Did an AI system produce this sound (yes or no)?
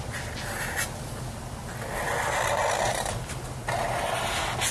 no